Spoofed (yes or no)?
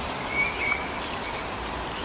no